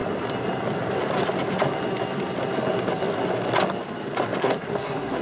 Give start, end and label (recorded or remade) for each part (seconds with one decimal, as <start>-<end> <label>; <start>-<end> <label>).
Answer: 0.0-4.4 recorded; 4.4-5.2 remade